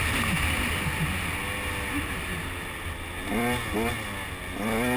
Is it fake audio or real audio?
real